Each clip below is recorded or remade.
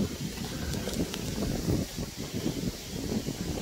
recorded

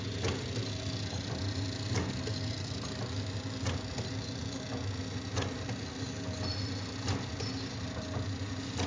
recorded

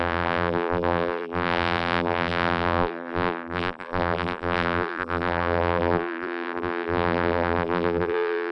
remade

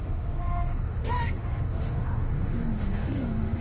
remade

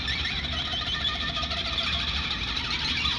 recorded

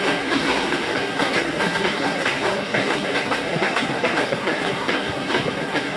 remade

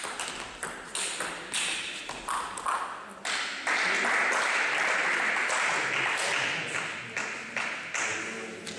recorded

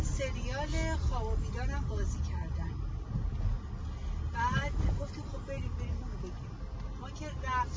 recorded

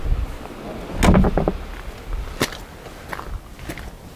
recorded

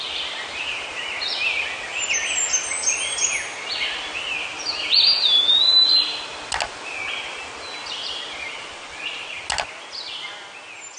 recorded